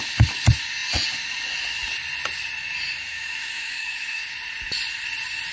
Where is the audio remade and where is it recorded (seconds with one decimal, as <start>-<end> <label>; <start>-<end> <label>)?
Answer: 0.0-3.1 recorded; 3.1-4.2 remade; 4.2-5.5 recorded